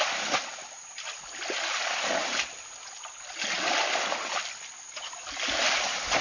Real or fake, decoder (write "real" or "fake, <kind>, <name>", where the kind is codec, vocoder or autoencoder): real